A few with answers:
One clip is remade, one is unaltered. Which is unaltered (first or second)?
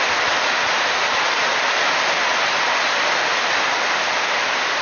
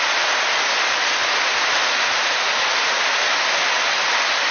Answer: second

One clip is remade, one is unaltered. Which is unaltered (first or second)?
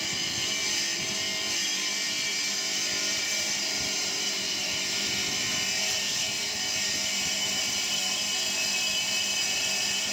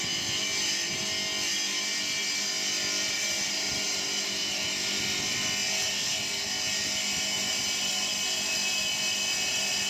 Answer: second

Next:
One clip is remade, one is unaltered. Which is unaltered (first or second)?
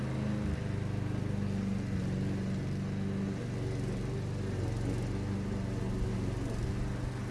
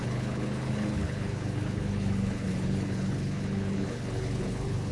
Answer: first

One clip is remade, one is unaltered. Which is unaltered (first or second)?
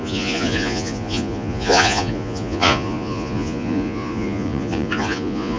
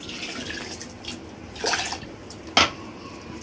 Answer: second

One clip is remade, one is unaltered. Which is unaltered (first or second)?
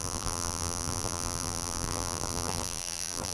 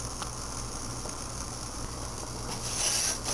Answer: second